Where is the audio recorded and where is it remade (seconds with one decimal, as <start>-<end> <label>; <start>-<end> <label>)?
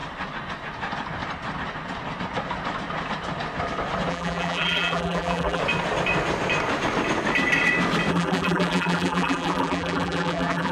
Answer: 0.0-4.1 recorded; 4.1-5.6 remade; 5.6-8.1 recorded; 8.1-10.7 remade